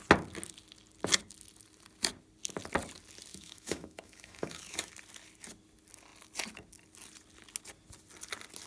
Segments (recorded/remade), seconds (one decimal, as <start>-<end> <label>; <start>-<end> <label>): 0.0-3.3 recorded; 3.3-4.9 remade; 4.9-8.7 recorded